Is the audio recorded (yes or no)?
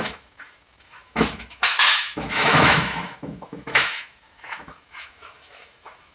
no